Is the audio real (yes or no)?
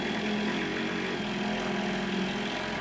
yes